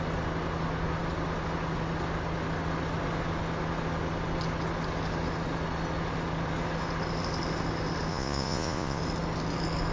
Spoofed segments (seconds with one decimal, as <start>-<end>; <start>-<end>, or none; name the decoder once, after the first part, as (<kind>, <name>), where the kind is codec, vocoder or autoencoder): 8.1-9.0 (vocoder, Vocos)